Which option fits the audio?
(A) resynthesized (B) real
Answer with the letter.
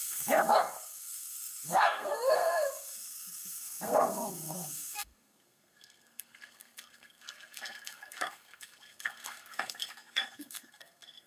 A